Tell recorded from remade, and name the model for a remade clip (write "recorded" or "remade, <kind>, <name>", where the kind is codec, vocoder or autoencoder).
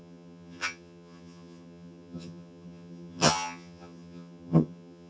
remade, vocoder, HiFi-GAN